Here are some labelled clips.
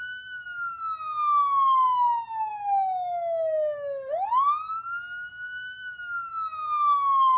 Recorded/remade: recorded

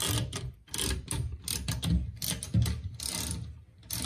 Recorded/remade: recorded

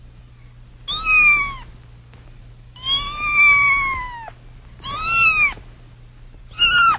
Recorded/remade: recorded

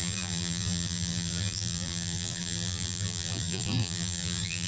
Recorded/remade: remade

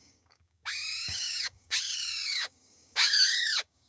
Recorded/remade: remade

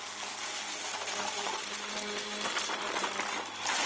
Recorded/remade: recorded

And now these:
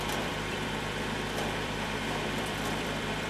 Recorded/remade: remade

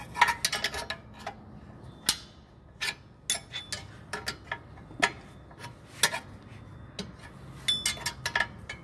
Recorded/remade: recorded